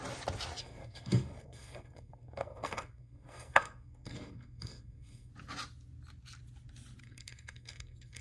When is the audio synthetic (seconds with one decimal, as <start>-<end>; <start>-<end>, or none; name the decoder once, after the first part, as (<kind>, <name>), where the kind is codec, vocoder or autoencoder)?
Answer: 0.6-5.3 (codec, SNAC); 7.0-8.2